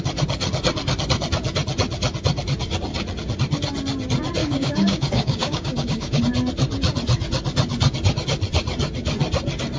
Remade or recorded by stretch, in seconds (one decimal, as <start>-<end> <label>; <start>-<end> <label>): 0.0-4.4 recorded; 4.4-6.2 remade; 6.2-9.8 recorded

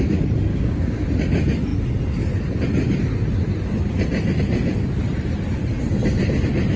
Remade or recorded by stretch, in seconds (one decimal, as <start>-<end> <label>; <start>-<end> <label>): 0.0-0.5 recorded; 0.5-1.1 remade; 1.1-6.8 recorded

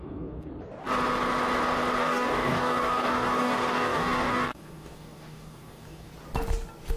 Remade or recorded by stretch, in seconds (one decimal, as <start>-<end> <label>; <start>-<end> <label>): 0.0-0.5 remade; 0.5-2.0 recorded; 2.0-6.1 remade; 6.1-7.0 recorded

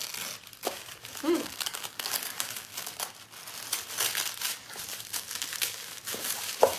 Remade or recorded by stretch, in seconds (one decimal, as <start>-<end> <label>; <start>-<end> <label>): 0.0-0.6 recorded; 0.6-2.9 remade; 2.9-4.9 recorded; 4.9-6.8 remade

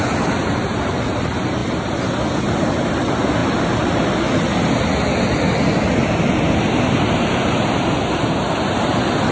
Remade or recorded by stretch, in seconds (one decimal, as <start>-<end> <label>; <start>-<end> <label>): 0.0-9.3 recorded